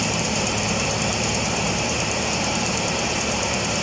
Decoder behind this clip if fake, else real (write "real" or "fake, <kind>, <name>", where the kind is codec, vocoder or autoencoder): fake, vocoder, BigVGAN v2